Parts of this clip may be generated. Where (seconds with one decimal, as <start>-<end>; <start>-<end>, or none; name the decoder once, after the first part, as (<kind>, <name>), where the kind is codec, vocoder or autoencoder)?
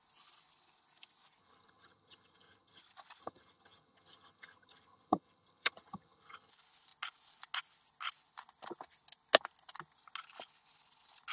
1.4-2.8 (vocoder, HiFi-GAN); 3.2-6.5